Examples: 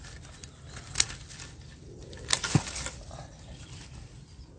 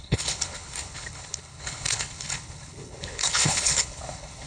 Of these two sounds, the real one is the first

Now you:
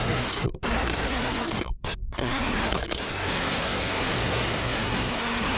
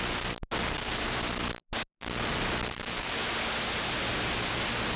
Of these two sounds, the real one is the second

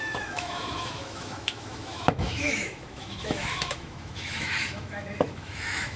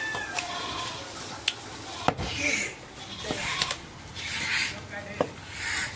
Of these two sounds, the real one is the second